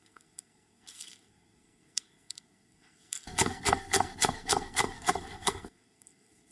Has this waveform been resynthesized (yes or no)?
yes